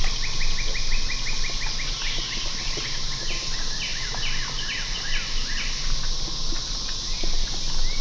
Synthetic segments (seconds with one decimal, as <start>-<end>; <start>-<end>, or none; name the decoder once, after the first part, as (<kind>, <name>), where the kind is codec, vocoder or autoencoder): none